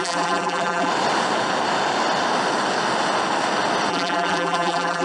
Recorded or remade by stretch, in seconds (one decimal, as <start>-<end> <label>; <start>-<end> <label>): 0.0-0.9 remade; 0.9-3.9 recorded; 3.9-5.0 remade